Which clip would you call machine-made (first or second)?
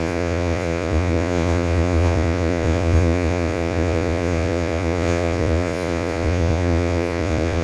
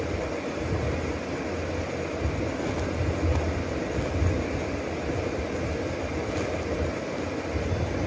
first